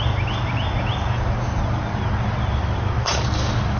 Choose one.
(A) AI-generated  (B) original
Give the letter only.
B